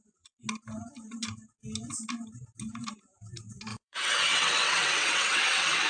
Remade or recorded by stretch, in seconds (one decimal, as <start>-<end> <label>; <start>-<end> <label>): 0.0-3.7 recorded; 3.7-5.9 remade